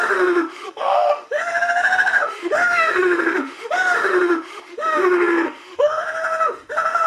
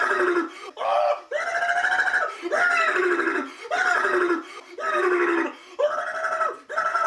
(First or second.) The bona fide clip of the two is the second